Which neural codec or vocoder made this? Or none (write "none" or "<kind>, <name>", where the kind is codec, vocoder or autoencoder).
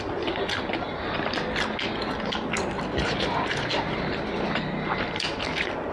none